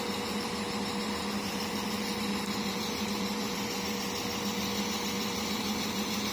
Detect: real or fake fake